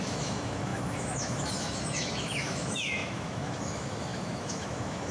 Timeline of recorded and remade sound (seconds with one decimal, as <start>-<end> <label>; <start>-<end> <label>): 0.0-5.1 remade